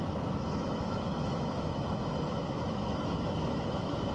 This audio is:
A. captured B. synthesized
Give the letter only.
B